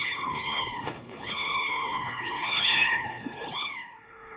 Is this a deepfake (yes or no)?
yes